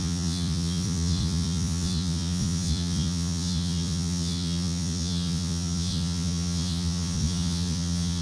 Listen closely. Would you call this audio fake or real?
fake